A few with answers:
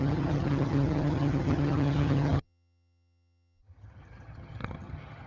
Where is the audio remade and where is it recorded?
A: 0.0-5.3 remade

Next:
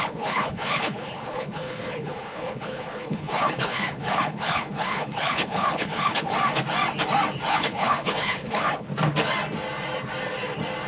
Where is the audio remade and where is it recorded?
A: 0.0-6.3 remade; 6.3-7.5 recorded; 7.5-8.9 remade; 8.9-10.9 recorded

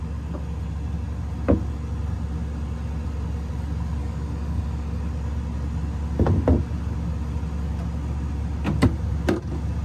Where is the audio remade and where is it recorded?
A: 0.0-4.0 recorded; 4.0-5.0 remade; 5.0-9.8 recorded

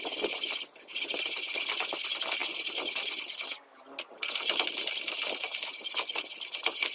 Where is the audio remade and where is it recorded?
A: 0.0-6.9 recorded

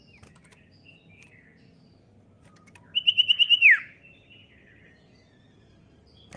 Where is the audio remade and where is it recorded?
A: 0.0-6.4 recorded

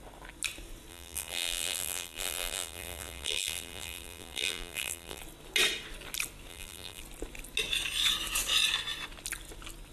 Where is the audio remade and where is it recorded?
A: 0.0-0.9 recorded; 0.9-5.2 remade; 5.2-6.5 recorded; 6.5-7.0 remade; 7.0-9.9 recorded

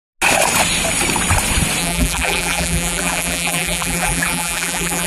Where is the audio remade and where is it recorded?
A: 0.0-1.8 recorded; 1.8-5.1 remade

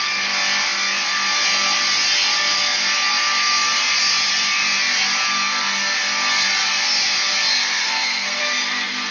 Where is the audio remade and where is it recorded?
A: 0.0-7.8 recorded; 7.8-8.4 remade; 8.4-9.1 recorded